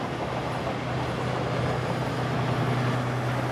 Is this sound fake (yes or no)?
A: no